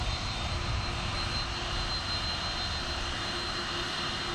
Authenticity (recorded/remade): recorded